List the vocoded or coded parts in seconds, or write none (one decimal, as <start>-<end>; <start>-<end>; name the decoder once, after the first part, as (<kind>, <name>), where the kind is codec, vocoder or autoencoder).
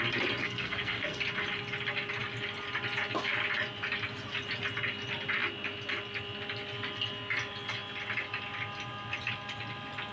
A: 0.4-1.2 (codec, SNAC)